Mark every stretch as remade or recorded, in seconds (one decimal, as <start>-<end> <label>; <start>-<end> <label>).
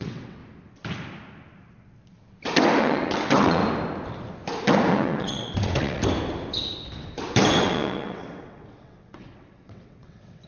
0.0-0.4 remade; 0.4-2.8 recorded; 2.8-3.6 remade; 3.6-4.9 recorded; 4.9-6.0 remade; 6.0-7.5 recorded; 7.5-10.5 remade